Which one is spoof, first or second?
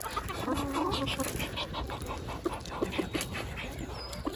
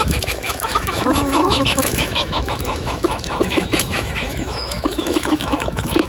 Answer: second